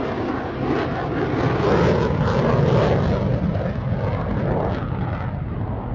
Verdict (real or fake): real